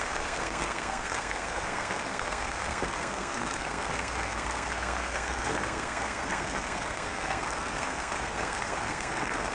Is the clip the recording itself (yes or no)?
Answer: no